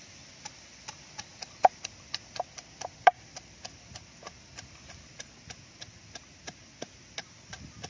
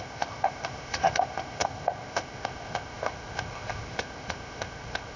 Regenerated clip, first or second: second